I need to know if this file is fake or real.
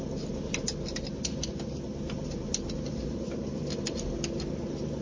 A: real